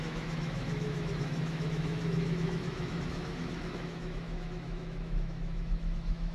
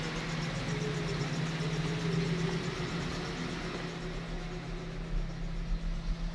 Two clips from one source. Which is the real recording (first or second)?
second